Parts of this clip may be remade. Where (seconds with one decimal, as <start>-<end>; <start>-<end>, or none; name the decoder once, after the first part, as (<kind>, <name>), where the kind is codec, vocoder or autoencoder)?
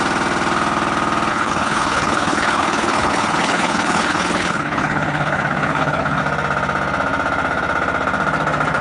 1.3-6.2 (codec, HILCodec)